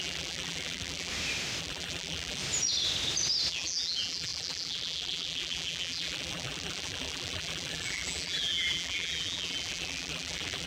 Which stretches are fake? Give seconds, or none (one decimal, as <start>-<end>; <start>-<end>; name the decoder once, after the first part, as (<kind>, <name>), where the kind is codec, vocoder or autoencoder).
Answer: 0.0-1.1 (vocoder, BigVGAN v2); 1.6-2.4; 3.5-10.7